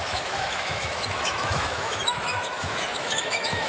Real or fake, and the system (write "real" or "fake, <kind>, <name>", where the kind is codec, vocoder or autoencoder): fake, autoencoder, DAC-VAE